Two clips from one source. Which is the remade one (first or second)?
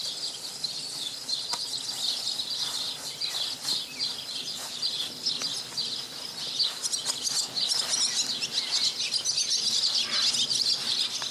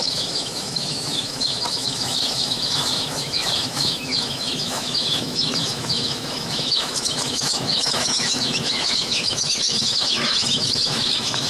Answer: second